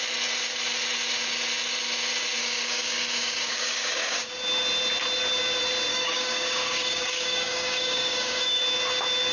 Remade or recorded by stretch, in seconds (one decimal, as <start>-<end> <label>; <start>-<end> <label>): 0.0-2.4 recorded; 2.4-4.3 remade; 4.3-5.9 recorded; 5.9-8.6 remade; 8.6-9.3 recorded